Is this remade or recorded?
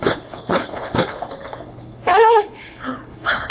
remade